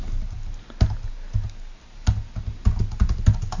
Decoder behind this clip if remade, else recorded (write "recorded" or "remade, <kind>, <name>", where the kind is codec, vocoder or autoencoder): recorded